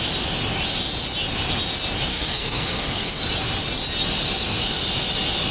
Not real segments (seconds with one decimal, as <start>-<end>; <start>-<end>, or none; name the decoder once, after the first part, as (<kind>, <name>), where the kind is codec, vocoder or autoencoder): 2.1-3.2 (codec, SNAC)